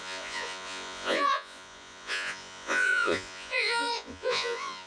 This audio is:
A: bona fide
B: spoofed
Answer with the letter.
B